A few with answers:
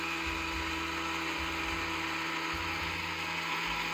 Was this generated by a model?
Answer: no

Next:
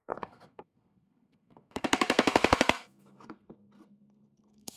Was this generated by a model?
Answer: yes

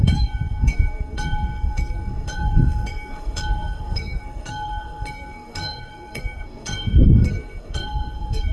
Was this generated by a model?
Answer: yes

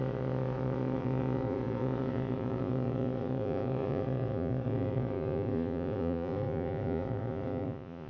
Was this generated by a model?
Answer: yes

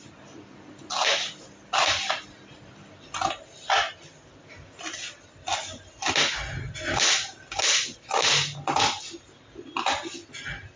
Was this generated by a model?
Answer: no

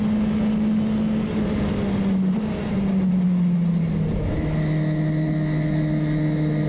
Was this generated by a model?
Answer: no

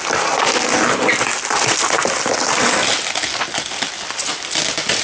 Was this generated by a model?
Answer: no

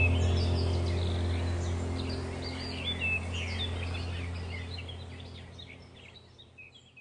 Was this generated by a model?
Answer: no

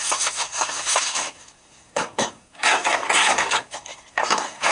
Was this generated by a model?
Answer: yes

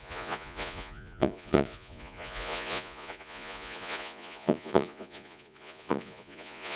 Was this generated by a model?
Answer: yes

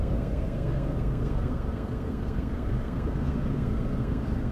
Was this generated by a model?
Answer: yes